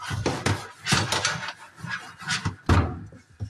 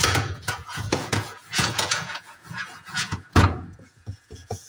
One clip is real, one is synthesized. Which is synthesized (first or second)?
second